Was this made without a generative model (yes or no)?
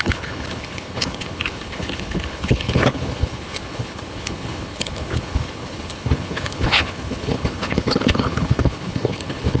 no